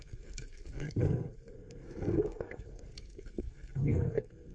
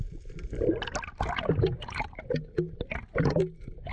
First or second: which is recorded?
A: second